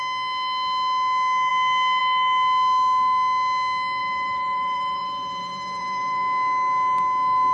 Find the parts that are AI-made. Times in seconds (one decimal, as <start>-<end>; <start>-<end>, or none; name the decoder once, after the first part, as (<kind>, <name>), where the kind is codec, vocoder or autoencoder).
4.0-6.2 (vocoder, BigVGAN v2)

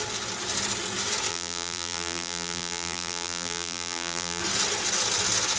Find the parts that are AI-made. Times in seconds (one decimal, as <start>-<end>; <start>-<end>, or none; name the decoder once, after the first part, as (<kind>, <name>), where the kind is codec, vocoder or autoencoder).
1.3-4.4 (vocoder, BigVGAN v2)

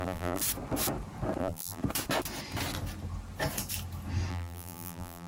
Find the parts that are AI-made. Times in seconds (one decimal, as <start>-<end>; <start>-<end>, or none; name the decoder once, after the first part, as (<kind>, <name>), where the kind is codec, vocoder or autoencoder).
0.0-0.4 (vocoder, BigVGAN v2); 1.4-1.8; 4.3-5.3